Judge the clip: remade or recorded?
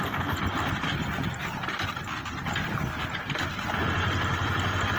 recorded